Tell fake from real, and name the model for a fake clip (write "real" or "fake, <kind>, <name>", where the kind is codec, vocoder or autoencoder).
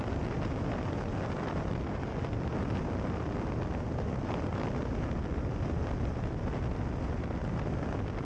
real